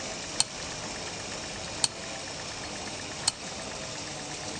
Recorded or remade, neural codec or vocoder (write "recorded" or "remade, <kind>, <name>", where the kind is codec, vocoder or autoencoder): recorded